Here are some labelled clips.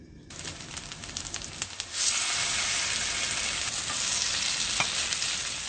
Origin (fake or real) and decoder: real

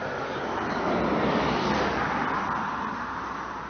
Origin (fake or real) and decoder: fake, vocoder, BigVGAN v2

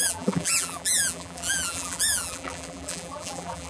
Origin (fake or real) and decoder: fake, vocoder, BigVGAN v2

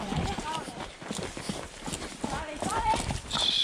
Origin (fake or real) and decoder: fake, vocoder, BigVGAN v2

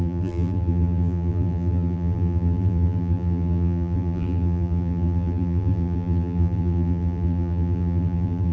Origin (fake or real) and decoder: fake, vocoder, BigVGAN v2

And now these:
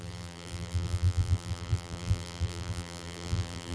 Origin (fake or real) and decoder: fake, vocoder, BigVGAN v2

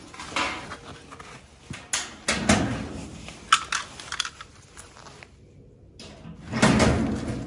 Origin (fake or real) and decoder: real